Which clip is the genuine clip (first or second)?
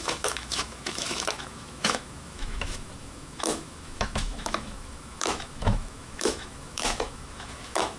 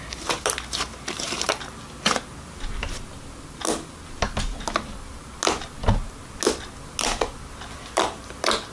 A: second